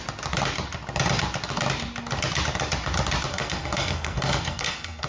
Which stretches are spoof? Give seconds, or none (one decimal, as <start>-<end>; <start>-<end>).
3.3-5.1